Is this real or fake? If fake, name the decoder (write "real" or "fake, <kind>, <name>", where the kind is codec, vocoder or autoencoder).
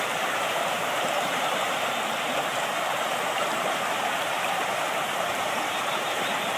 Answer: fake, vocoder, BigVGAN v2